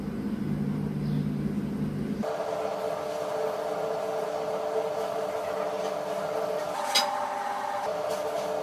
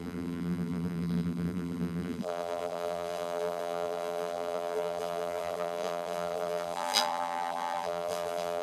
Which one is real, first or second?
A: first